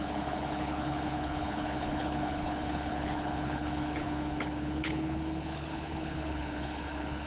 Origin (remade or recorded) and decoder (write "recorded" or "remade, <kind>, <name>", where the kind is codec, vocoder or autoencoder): remade, codec, HILCodec